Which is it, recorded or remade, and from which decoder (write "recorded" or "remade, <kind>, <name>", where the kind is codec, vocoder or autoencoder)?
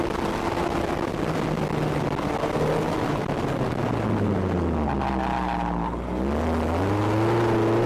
recorded